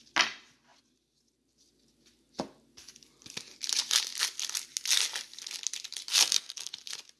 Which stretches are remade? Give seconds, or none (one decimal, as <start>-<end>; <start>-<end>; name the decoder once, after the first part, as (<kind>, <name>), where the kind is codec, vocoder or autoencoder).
6.1-6.7 (codec, SNAC)